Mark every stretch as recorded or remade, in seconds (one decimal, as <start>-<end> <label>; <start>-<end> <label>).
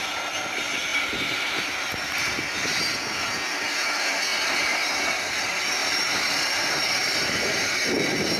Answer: 0.0-0.9 recorded; 0.9-2.8 remade; 2.8-4.3 recorded; 4.3-5.0 remade; 5.0-5.8 recorded; 5.8-7.8 remade; 7.8-8.4 recorded